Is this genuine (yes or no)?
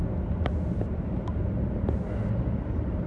yes